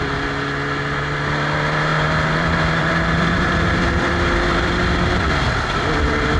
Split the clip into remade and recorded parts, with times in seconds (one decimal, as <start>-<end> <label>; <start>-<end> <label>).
0.0-1.9 recorded; 1.9-5.2 remade; 5.2-6.4 recorded